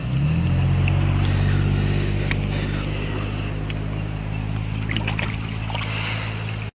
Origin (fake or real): real